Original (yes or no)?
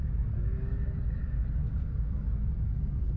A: yes